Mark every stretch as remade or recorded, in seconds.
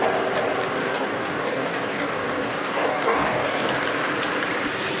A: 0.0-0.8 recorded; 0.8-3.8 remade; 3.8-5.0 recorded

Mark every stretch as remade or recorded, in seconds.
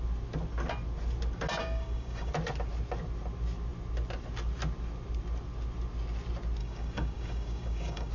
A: 0.0-1.6 recorded; 1.6-2.3 remade; 2.3-6.6 recorded; 6.6-8.1 remade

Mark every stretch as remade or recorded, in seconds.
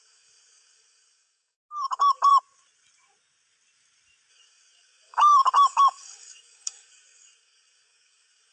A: 0.0-2.3 remade; 2.3-4.3 recorded; 4.3-8.5 remade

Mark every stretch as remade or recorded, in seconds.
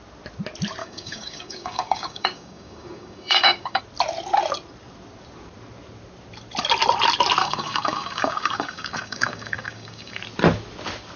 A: 0.0-0.8 recorded; 0.8-3.8 remade; 3.8-7.4 recorded; 7.4-10.2 remade; 10.2-11.2 recorded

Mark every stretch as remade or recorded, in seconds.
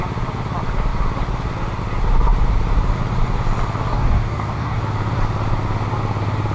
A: 0.0-3.9 recorded; 3.9-4.8 remade; 4.8-6.5 recorded